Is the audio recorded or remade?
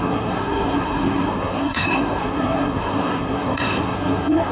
remade